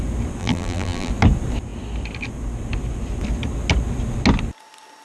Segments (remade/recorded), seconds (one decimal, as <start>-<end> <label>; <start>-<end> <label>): 0.0-0.4 recorded; 0.4-1.1 remade; 1.1-5.0 recorded